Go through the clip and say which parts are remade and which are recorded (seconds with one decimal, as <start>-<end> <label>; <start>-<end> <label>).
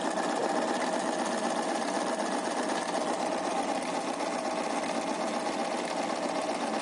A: 0.0-0.4 recorded; 0.4-3.3 remade; 3.3-6.8 recorded